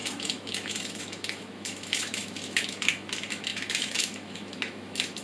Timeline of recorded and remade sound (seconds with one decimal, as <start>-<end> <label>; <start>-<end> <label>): 0.0-5.2 remade